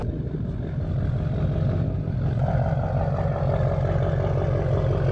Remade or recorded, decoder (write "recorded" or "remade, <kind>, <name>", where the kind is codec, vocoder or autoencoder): remade, vocoder, BigVGAN v2